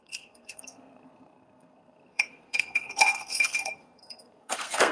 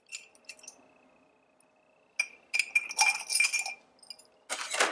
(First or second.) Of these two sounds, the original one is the second